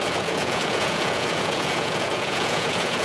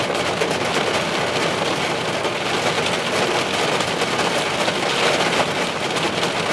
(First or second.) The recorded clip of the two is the second